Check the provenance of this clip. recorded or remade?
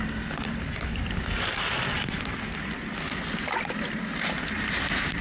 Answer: recorded